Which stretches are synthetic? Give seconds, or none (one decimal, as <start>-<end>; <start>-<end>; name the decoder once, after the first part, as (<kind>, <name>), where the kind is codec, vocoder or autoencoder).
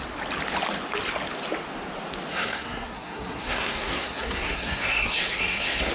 2.3-5.9 (codec, SNAC)